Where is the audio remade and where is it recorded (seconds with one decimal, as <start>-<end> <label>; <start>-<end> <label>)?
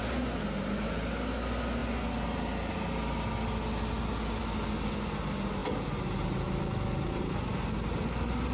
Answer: 0.0-8.5 recorded